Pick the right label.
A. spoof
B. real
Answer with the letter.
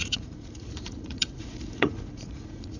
A